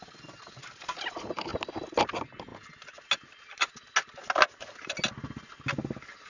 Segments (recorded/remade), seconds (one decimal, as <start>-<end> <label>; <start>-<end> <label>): 0.0-6.3 recorded

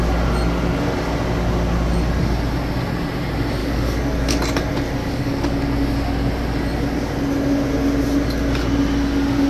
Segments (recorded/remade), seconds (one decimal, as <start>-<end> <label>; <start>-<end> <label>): 0.0-3.6 recorded; 3.6-4.3 remade; 4.3-5.0 recorded; 5.0-5.6 remade; 5.6-9.5 recorded

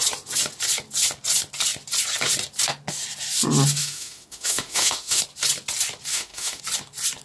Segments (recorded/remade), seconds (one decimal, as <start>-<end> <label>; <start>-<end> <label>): 0.0-3.8 recorded; 3.8-5.2 remade; 5.2-6.1 recorded; 6.1-6.6 remade; 6.6-7.2 recorded

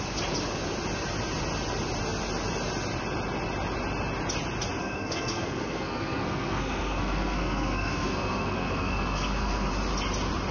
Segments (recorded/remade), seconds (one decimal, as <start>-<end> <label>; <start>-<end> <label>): 0.0-4.8 recorded; 4.8-9.7 remade; 9.7-10.5 recorded

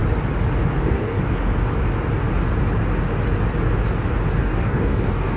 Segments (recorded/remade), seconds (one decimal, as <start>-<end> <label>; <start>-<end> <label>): 0.0-0.7 recorded; 0.7-1.2 remade; 1.2-4.4 recorded; 4.4-5.4 remade

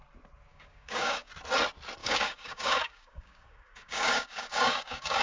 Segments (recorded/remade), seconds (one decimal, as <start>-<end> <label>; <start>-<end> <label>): 0.0-0.5 recorded; 0.5-1.3 remade; 1.3-2.0 recorded; 2.0-5.2 remade

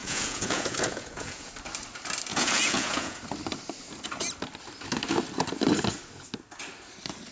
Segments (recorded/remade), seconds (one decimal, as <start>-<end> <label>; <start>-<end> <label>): 0.0-1.5 remade; 1.5-2.3 recorded; 2.3-3.2 remade; 3.2-7.3 recorded